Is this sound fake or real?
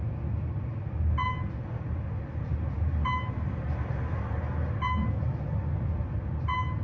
real